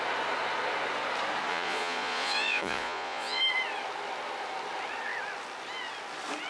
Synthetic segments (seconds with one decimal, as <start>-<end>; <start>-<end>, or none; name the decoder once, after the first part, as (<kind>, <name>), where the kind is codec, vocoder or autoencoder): 1.5-3.4 (vocoder, Vocos)